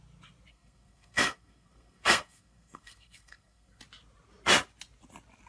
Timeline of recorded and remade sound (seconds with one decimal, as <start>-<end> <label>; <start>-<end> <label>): 0.0-0.5 recorded; 0.5-3.8 remade; 3.8-5.5 recorded